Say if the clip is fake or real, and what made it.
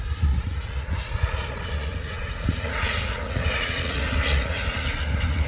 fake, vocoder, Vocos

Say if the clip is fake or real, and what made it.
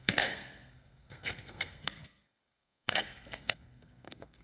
fake, codec, SNAC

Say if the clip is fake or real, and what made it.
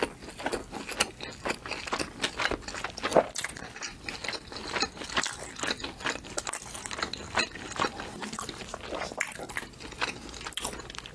real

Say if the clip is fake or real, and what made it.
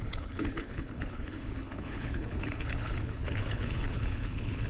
fake, codec, HILCodec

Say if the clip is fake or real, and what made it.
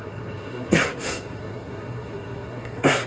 fake, codec, SNAC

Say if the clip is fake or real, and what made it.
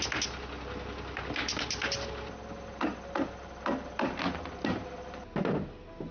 real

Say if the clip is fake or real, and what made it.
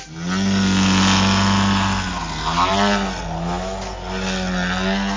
real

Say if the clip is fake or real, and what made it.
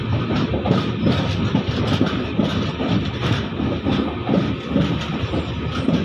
real